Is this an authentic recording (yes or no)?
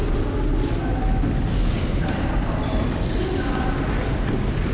yes